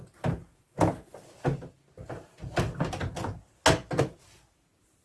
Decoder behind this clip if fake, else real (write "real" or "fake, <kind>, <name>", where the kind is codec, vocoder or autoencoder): real